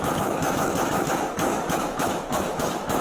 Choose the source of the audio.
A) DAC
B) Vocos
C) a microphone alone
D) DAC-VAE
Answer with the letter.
D